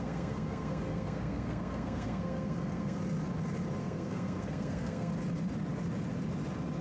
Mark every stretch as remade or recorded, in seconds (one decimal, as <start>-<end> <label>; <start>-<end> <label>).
0.0-3.0 remade; 3.0-3.8 recorded; 3.8-5.1 remade; 5.1-6.8 recorded